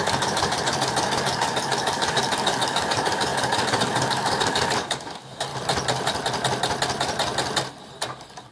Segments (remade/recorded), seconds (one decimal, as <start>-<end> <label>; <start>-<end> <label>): 0.0-5.5 remade; 5.5-8.5 recorded